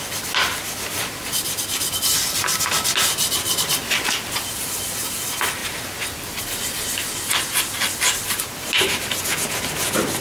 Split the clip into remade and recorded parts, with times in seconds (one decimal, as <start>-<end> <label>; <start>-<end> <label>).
0.0-10.2 recorded